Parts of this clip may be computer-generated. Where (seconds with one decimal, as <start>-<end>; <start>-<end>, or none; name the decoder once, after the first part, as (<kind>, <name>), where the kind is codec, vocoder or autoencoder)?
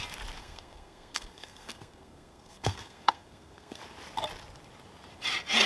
0.4-3.8 (codec, SNAC)